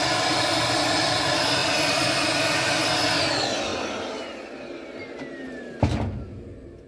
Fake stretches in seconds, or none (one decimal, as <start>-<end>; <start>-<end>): none

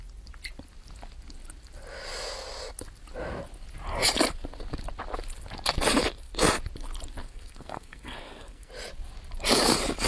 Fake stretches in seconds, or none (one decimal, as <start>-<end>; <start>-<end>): 7.2-8.7